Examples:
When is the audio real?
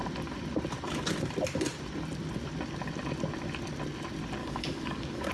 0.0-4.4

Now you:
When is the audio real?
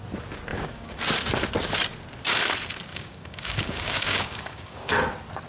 0.0-0.5; 1.0-2.9; 5.0-5.5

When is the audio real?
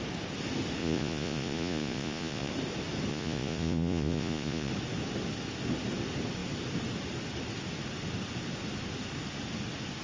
0.0-0.8; 2.5-3.1; 4.7-10.0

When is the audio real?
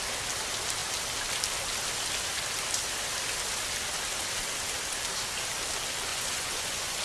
0.0-6.1